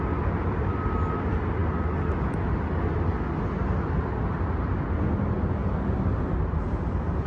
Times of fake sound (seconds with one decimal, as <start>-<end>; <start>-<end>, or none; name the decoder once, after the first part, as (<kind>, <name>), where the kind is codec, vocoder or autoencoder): none